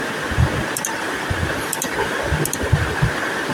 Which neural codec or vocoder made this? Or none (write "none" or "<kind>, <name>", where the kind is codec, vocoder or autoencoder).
none